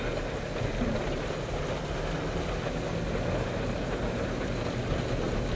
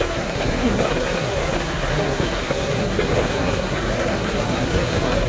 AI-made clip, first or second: second